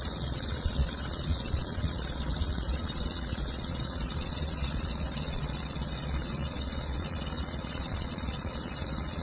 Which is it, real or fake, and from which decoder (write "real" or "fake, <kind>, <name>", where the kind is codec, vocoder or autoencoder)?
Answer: fake, vocoder, Vocos